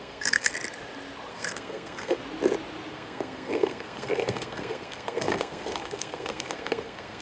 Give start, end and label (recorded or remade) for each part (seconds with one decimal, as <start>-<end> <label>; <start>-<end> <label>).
0.0-0.5 remade; 0.5-1.3 recorded; 1.3-2.2 remade; 2.2-2.9 recorded; 2.9-7.2 remade